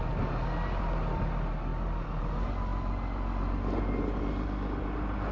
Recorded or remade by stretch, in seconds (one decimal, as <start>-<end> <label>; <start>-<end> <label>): 0.0-5.3 recorded